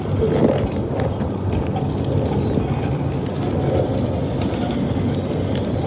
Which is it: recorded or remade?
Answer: recorded